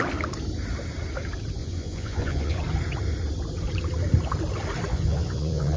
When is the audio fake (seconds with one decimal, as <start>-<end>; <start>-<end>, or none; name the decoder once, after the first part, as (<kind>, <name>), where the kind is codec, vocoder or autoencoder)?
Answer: 1.6-2.6 (vocoder, Vocos); 4.9-5.8